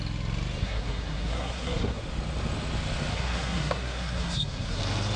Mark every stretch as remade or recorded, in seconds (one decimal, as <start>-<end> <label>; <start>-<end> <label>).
0.0-0.6 recorded; 0.6-2.0 remade; 2.0-3.1 recorded; 3.1-4.8 remade; 4.8-5.2 recorded